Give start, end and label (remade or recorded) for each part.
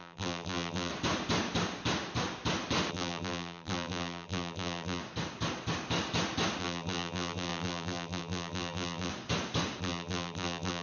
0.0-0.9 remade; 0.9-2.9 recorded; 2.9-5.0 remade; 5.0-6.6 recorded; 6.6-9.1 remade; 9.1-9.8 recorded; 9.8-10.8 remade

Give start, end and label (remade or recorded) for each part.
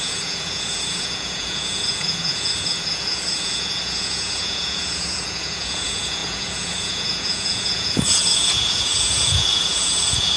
0.0-10.4 remade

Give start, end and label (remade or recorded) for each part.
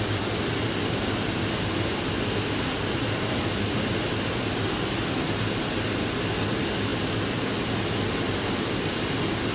0.0-9.5 recorded